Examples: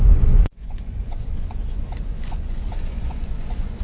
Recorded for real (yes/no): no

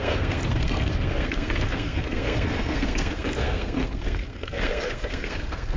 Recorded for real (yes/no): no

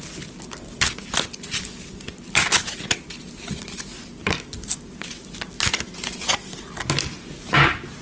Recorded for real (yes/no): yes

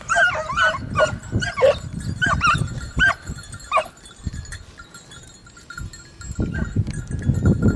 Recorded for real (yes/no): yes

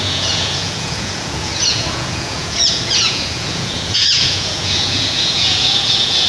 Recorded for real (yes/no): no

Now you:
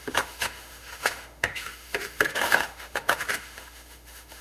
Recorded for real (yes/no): no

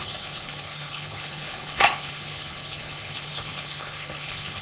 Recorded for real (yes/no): no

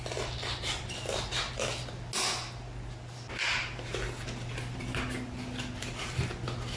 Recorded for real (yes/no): yes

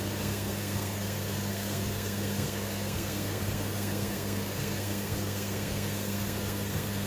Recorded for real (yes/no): no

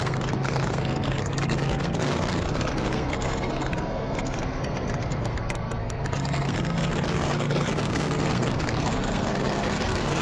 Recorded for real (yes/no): no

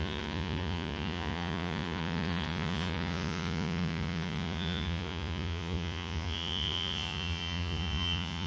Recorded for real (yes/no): no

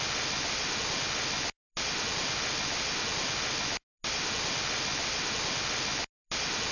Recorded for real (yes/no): yes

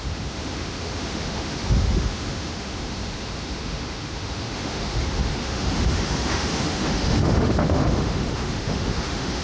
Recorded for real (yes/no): no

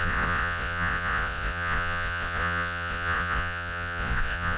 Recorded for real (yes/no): no